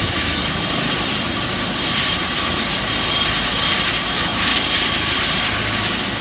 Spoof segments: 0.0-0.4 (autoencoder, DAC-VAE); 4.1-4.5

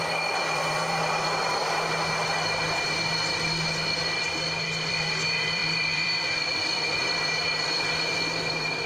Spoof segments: 0.0-1.6 (vocoder, BigVGAN v2); 4.9-8.9